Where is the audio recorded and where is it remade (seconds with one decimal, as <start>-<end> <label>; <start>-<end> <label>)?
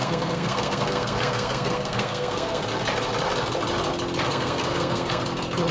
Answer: 0.0-2.6 remade; 2.6-4.3 recorded; 4.3-5.2 remade; 5.2-5.7 recorded